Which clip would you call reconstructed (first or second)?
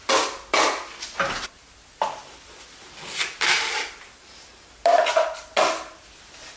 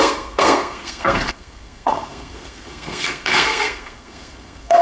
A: second